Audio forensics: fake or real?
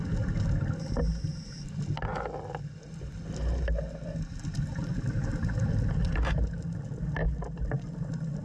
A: real